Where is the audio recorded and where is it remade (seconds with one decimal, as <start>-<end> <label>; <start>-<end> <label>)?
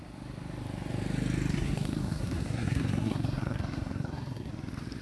0.0-1.5 recorded; 1.5-4.5 remade; 4.5-5.0 recorded